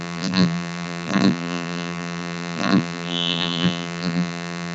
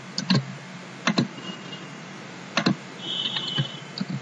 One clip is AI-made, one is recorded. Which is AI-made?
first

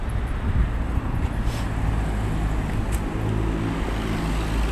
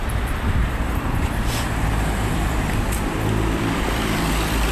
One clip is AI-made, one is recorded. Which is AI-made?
second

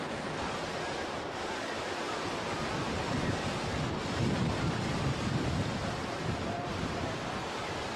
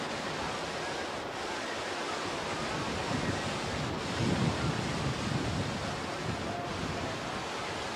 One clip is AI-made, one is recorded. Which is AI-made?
first